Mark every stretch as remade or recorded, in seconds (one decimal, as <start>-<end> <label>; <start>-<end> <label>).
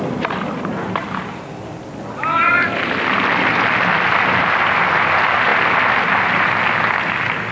0.0-7.5 recorded